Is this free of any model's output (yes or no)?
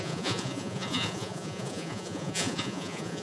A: no